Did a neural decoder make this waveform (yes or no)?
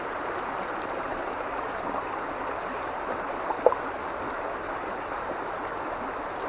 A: yes